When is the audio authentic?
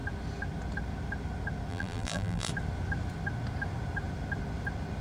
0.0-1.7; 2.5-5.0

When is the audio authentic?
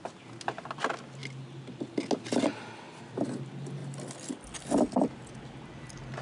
0.0-6.2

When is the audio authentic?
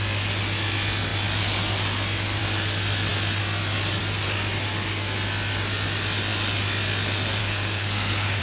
0.0-7.4